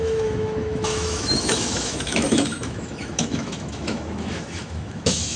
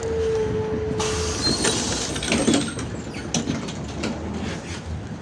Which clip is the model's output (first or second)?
first